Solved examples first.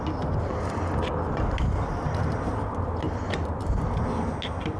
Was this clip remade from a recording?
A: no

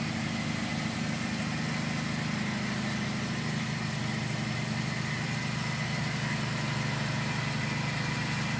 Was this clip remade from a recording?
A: no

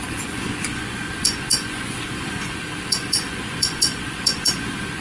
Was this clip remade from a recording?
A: yes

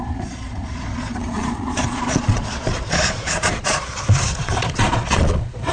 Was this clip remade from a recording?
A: yes